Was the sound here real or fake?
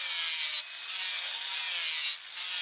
real